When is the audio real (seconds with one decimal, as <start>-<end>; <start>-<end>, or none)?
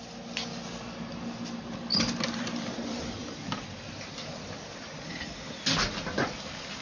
0.0-6.8